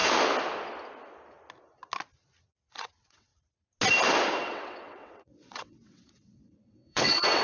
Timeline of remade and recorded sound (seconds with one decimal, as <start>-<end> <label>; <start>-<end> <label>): 0.0-2.7 recorded; 2.7-3.3 remade; 3.3-4.4 recorded; 4.4-7.4 remade